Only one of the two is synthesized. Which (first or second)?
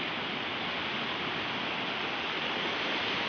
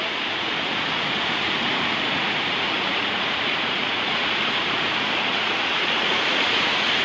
second